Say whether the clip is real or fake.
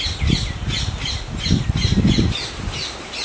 real